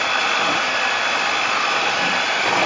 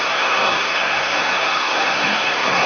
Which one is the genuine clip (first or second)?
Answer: first